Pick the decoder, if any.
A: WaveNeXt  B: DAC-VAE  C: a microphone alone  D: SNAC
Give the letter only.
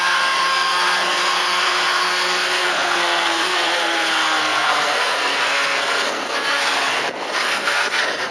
D